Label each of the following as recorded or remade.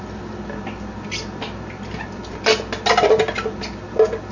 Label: recorded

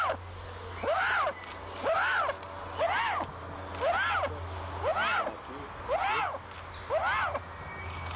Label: recorded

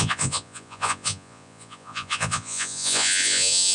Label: remade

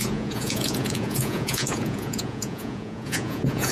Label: remade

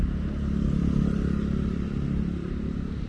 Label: recorded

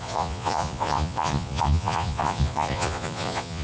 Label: remade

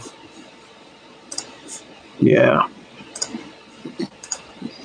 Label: remade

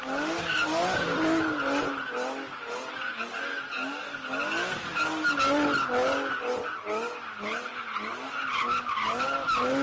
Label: recorded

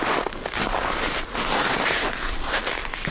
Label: recorded